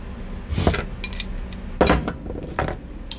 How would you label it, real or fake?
real